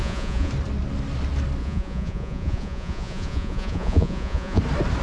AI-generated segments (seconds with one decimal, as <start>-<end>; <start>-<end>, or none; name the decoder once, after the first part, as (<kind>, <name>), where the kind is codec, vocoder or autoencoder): 0.0-0.5 (vocoder, Vocos); 1.6-4.6